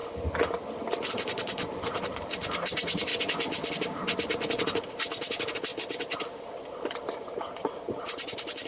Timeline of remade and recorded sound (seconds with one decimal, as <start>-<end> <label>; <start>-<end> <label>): 0.0-1.1 recorded; 1.1-3.1 remade; 3.1-3.7 recorded; 3.7-5.7 remade; 5.7-6.3 recorded; 6.3-8.7 remade

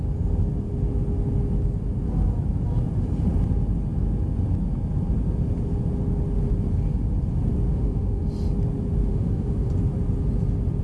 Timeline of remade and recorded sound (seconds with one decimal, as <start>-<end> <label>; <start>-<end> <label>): 0.0-7.7 recorded; 7.7-8.2 remade; 8.2-9.1 recorded; 9.1-9.7 remade; 9.7-10.8 recorded

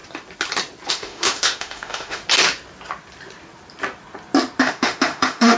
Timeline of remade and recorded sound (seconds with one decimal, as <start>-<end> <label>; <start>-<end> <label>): 0.0-0.9 recorded; 0.9-2.2 remade; 2.2-4.6 recorded; 4.6-5.6 remade

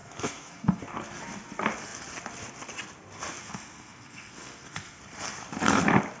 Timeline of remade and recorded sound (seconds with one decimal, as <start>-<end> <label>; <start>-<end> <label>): 0.0-0.8 remade; 0.8-3.4 recorded; 3.4-5.0 remade; 5.0-6.2 recorded

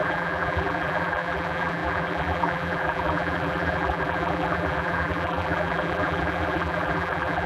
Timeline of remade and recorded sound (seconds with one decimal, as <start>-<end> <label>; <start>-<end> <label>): 0.0-7.5 remade

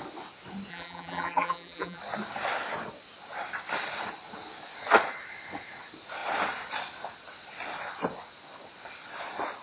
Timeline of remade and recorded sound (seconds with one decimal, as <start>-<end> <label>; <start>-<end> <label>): 0.0-0.7 recorded; 0.7-2.0 remade; 2.0-9.6 recorded